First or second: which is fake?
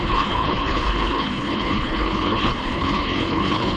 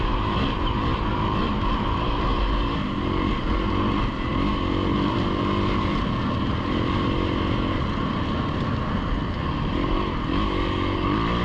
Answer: first